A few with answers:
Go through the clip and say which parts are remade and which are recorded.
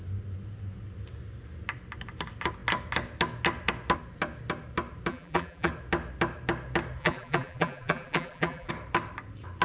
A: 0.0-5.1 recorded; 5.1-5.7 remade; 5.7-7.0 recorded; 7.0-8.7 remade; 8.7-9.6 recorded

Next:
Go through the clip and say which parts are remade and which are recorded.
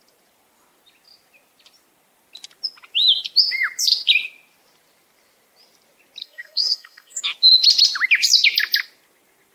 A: 0.0-6.2 recorded; 6.2-7.2 remade; 7.2-9.5 recorded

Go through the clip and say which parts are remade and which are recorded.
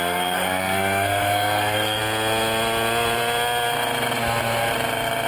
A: 0.0-2.0 remade; 2.0-5.3 recorded